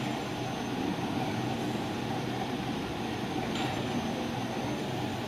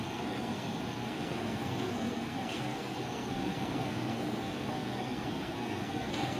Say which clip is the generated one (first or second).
second